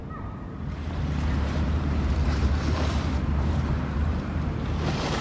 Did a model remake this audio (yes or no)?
yes